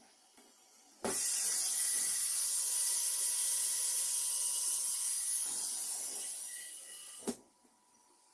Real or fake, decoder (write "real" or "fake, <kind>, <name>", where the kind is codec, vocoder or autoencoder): fake, vocoder, Vocos